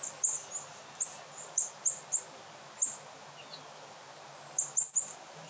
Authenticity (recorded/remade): recorded